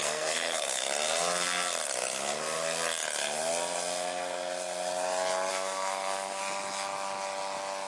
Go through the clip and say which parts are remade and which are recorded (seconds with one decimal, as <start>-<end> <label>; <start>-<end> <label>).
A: 0.0-0.8 remade; 0.8-5.5 recorded; 5.5-6.4 remade; 6.4-7.9 recorded